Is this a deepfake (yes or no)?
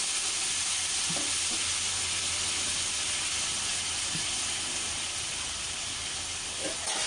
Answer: no